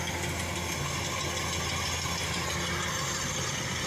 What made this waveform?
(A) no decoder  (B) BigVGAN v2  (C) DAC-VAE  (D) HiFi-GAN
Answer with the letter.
A